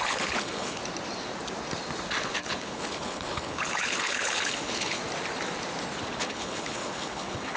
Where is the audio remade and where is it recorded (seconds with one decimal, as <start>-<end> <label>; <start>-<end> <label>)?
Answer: 0.0-0.8 remade; 0.8-2.2 recorded; 2.2-5.0 remade; 5.0-6.2 recorded; 6.2-7.6 remade